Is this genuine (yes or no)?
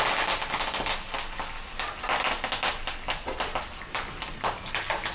yes